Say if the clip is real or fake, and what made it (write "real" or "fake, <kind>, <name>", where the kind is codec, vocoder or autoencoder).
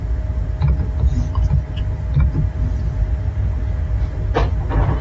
real